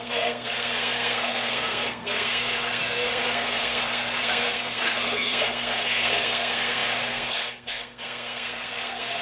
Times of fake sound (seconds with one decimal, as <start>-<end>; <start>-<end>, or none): 0.0-9.2